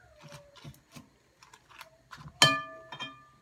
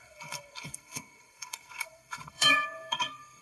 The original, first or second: first